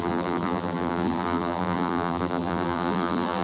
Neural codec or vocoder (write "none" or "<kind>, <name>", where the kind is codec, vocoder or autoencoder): vocoder, BigVGAN v2